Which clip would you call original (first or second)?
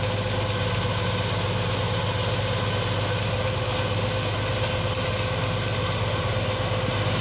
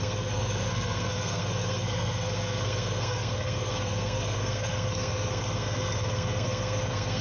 first